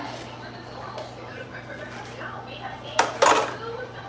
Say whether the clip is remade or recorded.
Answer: recorded